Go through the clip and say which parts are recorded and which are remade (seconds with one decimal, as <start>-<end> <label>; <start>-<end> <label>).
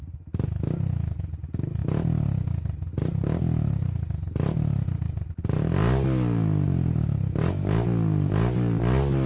0.0-9.3 recorded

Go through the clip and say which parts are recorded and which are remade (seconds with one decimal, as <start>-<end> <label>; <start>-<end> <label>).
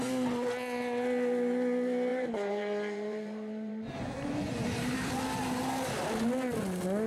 0.0-2.1 recorded; 2.1-5.1 remade; 5.1-7.1 recorded